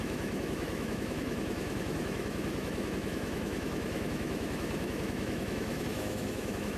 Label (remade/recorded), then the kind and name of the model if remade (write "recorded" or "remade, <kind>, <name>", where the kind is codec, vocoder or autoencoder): remade, autoencoder, DAC-VAE